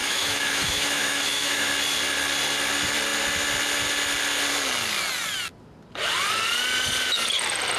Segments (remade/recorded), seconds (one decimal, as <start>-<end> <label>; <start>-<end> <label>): 0.0-1.7 remade; 1.7-7.8 recorded